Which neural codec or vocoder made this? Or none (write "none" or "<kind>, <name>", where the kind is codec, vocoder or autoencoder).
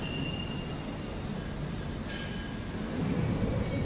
none